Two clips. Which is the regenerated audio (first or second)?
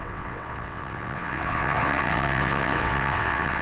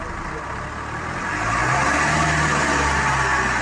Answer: first